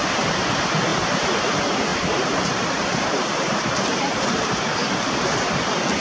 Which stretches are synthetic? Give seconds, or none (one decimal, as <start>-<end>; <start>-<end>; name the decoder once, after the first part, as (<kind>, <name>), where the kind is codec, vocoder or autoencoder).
0.9-1.5 (vocoder, BigVGAN v2); 1.9-5.5

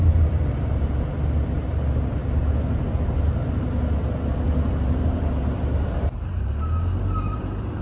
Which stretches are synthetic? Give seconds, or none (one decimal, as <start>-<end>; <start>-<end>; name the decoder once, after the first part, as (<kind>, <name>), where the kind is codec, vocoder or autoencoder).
0.0-2.2 (vocoder, BigVGAN v2); 4.7-6.3; 7.0-7.8

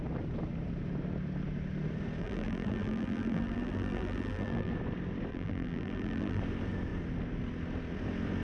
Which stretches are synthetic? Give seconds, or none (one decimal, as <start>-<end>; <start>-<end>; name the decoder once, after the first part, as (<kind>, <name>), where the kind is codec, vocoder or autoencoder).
2.2-4.7 (vocoder, BigVGAN v2); 5.3-6.4

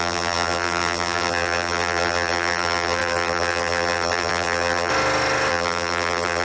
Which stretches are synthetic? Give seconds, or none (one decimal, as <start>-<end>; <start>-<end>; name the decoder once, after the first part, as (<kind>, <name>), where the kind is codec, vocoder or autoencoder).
0.0-4.9 (vocoder, BigVGAN v2); 5.5-6.4

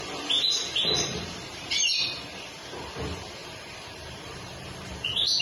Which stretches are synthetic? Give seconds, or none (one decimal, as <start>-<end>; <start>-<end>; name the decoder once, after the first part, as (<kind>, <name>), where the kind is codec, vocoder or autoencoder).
0.0-1.7 (vocoder, BigVGAN v2); 3.4-5.4

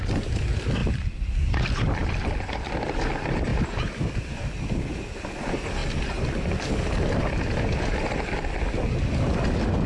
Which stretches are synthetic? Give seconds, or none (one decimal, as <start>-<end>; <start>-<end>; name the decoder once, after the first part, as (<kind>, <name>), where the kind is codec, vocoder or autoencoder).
0.8-1.6 (vocoder, BigVGAN v2); 2.0-3.1; 3.5-4.4